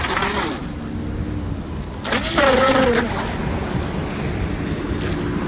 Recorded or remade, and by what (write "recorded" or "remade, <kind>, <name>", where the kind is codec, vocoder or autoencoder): recorded